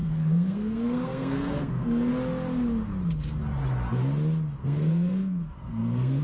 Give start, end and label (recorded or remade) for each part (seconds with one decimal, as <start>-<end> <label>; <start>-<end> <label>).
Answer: 0.0-2.1 remade; 2.1-4.6 recorded; 4.6-6.2 remade